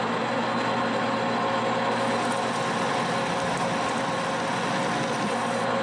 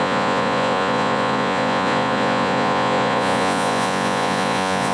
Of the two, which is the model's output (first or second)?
second